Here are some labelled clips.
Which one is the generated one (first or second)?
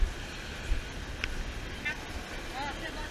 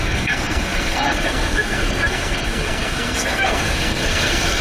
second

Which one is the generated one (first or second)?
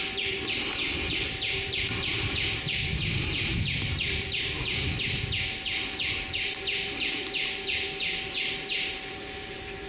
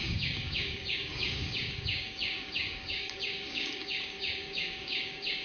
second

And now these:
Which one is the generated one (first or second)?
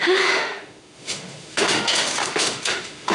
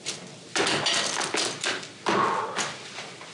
first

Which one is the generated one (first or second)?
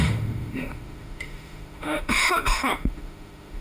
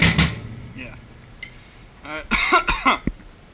first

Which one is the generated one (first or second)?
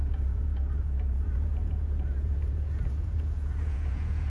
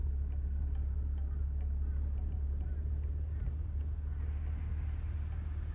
first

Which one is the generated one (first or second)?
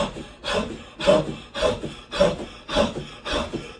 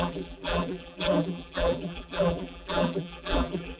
second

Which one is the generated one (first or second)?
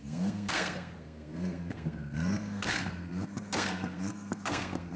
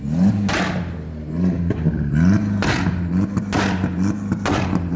first